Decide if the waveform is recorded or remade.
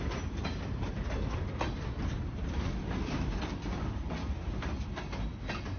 recorded